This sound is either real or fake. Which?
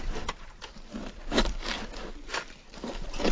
fake